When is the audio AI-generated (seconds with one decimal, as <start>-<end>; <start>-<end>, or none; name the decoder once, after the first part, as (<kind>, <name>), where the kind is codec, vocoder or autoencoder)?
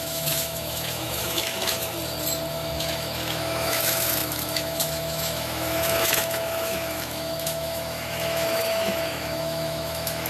0.0-1.9 (autoencoder, DAC-VAE); 2.5-10.3